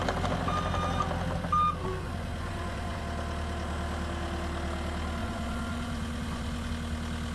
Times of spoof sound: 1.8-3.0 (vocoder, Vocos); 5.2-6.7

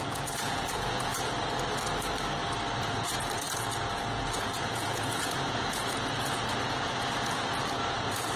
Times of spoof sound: 0.0-1.1 (vocoder, Vocos); 2.8-8.4

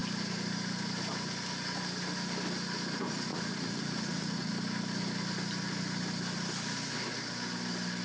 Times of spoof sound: 3.3-4.5 (vocoder, Vocos)

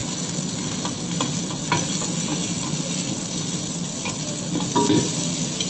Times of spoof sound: none